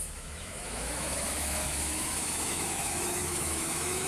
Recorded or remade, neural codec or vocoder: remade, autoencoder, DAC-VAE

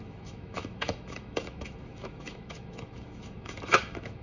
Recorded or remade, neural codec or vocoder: remade, autoencoder, DAC-VAE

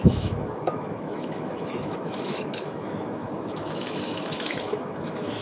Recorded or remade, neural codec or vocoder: remade, autoencoder, DAC-VAE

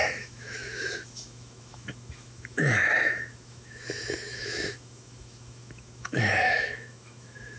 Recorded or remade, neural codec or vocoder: remade, autoencoder, DAC-VAE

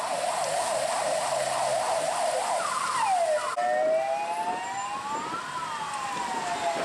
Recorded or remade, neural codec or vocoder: recorded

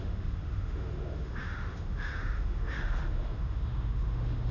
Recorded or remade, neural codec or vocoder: remade, autoencoder, DAC-VAE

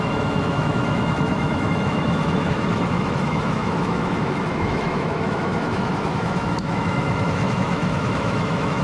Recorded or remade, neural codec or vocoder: remade, autoencoder, DAC-VAE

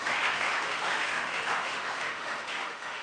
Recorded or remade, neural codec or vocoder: remade, autoencoder, DAC-VAE